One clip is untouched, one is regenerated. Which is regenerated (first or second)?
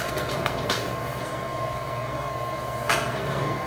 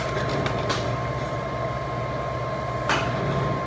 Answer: first